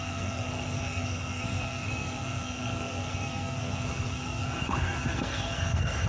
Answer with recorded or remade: remade